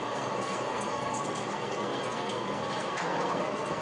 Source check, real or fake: fake